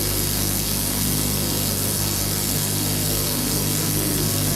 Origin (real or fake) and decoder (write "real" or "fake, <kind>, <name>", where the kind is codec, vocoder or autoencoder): fake, codec, SNAC